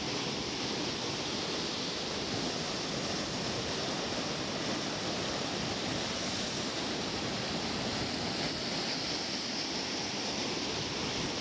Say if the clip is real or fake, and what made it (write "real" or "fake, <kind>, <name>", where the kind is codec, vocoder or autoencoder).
fake, vocoder, BigVGAN v2